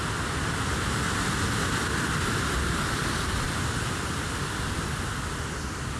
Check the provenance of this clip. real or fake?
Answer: real